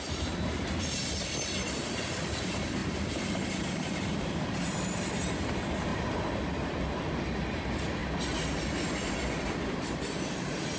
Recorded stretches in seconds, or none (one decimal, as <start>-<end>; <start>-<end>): 8.0-8.8